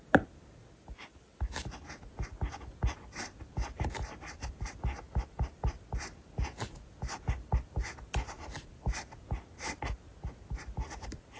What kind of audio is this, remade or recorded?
recorded